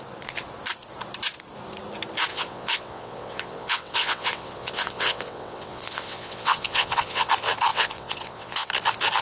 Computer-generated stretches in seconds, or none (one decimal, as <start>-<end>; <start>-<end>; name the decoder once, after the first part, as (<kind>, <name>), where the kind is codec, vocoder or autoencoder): 2.3-7.3 (vocoder, WaveNeXt); 7.7-8.7